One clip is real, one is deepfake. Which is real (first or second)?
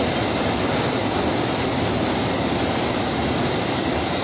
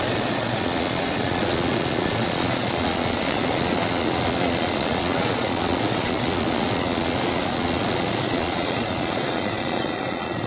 first